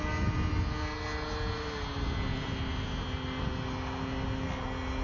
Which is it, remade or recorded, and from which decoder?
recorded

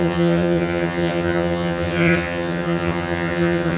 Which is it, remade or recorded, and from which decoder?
remade, vocoder, HiFi-GAN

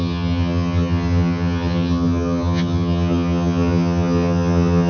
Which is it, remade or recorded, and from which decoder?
remade, vocoder, HiFi-GAN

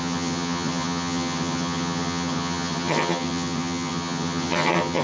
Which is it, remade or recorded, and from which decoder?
remade, vocoder, HiFi-GAN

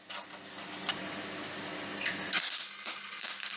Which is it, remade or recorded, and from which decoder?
recorded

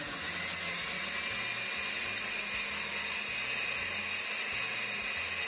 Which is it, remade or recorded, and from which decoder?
recorded